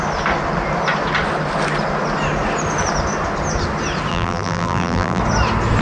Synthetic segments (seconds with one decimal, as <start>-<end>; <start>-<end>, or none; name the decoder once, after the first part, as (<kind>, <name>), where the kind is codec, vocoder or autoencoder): 4.1-5.2 (vocoder, BigVGAN v2)